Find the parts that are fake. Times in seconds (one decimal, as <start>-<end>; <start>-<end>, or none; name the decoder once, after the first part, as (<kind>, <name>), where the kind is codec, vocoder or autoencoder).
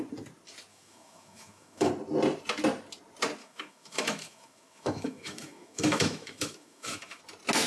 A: 0.7-1.9 (autoencoder, DAC-VAE); 3.4-7.2